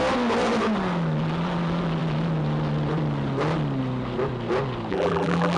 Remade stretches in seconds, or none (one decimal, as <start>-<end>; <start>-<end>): 4.9-5.6